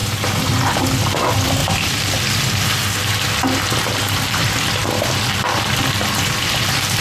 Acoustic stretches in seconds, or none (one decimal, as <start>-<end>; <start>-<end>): 0.9-1.6; 3.4-4.8